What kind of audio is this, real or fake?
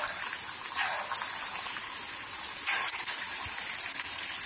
real